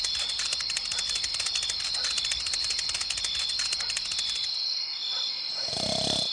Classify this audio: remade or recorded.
recorded